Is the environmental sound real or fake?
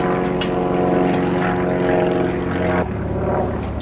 real